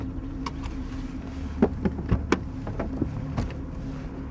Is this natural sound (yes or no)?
yes